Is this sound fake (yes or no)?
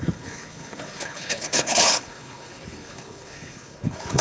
yes